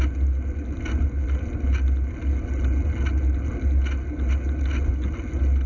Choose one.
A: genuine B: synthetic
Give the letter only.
A